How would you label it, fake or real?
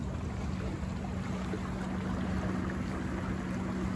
real